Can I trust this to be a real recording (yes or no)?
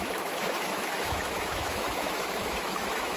no